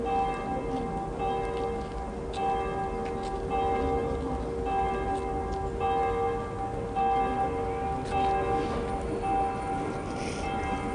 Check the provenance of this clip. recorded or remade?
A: recorded